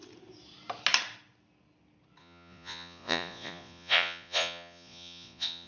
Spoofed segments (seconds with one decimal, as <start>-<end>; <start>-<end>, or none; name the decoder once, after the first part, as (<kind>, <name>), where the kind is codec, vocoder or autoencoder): 2.2-5.7 (vocoder, Vocos)